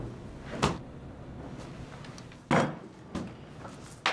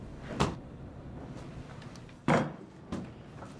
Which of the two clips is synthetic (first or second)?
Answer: second